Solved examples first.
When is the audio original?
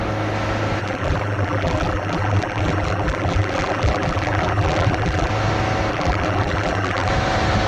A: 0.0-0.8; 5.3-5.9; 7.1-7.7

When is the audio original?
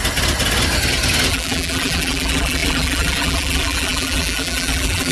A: 0.0-1.3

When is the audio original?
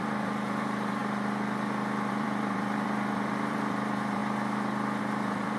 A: 1.0-2.1; 4.2-5.0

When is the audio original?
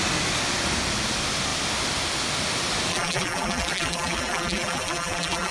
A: 0.0-2.9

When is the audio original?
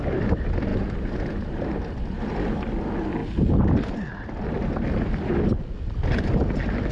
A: 0.0-0.7; 2.6-6.9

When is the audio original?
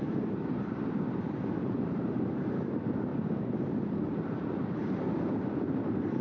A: 3.1-4.5